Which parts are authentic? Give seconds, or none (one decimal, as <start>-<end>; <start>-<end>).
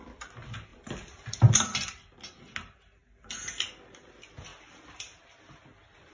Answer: 0.0-6.1